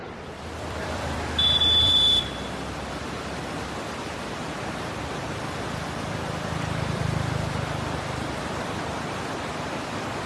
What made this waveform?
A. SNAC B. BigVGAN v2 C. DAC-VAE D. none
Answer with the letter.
B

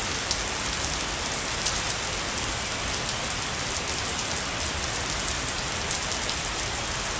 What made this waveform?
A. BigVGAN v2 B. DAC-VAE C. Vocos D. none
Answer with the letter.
D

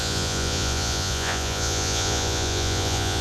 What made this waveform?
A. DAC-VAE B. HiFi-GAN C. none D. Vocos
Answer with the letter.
D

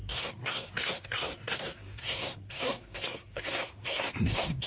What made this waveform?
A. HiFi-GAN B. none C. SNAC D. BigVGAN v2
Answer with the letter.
C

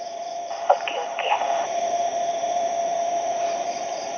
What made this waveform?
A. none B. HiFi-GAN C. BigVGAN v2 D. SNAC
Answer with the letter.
C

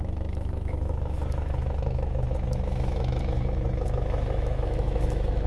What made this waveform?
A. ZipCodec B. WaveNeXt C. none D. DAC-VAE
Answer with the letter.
D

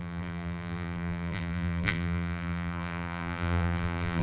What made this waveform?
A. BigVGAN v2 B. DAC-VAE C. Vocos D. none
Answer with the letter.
A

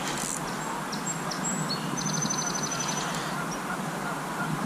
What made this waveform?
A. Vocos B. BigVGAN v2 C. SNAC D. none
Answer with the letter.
D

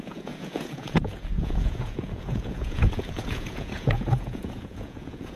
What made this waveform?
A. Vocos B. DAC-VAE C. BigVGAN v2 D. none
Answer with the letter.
A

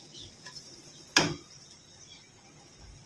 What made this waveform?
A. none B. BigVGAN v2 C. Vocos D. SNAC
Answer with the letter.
A